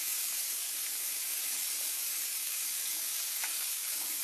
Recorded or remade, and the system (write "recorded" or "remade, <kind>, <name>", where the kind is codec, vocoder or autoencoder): remade, codec, DAC